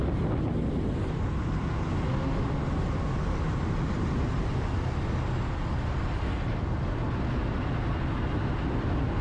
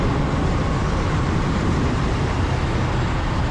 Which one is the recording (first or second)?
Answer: first